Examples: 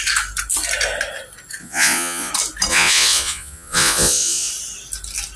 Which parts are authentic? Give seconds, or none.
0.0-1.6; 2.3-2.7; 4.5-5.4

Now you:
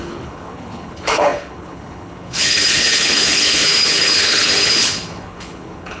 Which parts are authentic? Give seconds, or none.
none

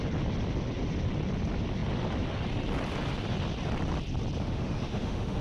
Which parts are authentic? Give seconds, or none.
0.0-4.4

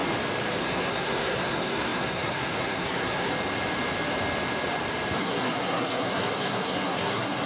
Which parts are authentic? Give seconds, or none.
0.0-0.6; 3.3-5.2

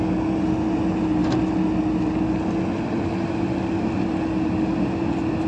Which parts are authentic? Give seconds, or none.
0.0-5.5

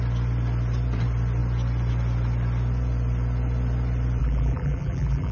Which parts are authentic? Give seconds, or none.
0.0-4.2